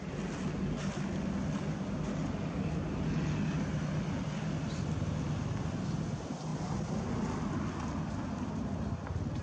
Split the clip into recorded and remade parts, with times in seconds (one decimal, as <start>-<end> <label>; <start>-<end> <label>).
0.0-9.4 recorded